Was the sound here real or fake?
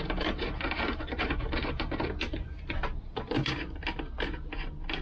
real